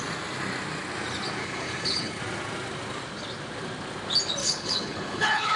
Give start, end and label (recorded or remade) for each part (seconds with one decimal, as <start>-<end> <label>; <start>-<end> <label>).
0.0-1.4 recorded; 1.4-2.2 remade; 2.2-4.4 recorded; 4.4-5.6 remade